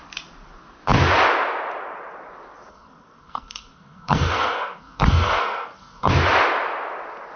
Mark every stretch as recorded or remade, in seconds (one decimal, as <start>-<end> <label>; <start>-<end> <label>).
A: 0.0-2.7 recorded; 2.7-6.1 remade; 6.1-7.4 recorded